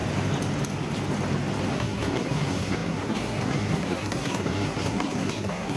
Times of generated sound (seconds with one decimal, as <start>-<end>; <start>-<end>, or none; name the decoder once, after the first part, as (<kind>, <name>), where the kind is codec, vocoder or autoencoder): 1.7-5.8 (codec, SNAC)